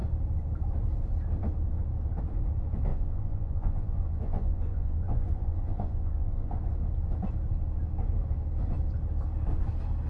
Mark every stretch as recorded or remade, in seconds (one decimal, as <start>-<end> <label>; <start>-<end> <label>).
0.0-2.9 recorded; 2.9-6.5 remade; 6.5-10.1 recorded